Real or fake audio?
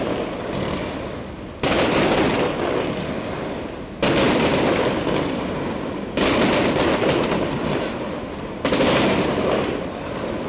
real